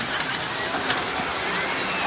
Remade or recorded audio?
recorded